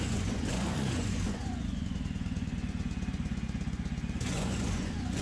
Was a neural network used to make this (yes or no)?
yes